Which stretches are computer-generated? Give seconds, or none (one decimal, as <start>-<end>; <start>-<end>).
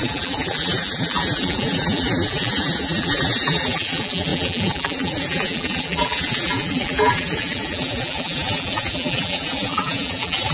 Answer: 0.0-10.5